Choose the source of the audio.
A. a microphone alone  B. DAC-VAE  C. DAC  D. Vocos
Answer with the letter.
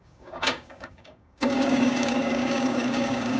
C